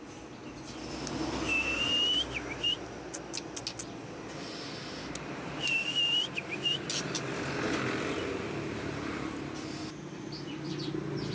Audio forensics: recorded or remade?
recorded